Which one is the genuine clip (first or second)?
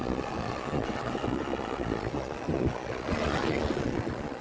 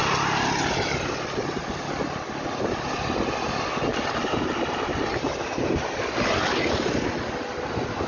second